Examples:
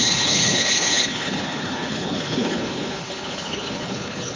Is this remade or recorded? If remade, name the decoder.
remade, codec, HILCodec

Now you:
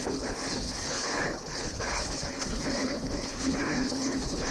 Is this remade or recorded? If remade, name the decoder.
remade, codec, HILCodec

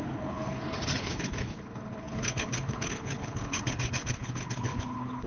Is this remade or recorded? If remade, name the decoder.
remade, codec, HILCodec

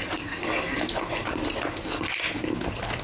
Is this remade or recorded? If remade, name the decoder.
recorded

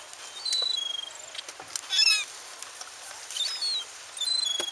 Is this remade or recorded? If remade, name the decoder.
recorded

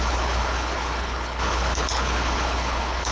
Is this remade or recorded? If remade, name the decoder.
remade, codec, HILCodec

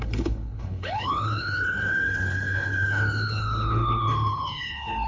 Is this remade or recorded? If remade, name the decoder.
remade, codec, HILCodec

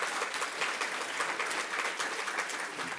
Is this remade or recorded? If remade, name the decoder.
recorded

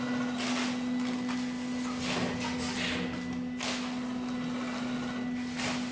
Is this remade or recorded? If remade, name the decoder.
recorded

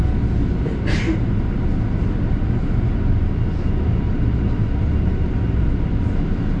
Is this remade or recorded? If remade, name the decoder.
recorded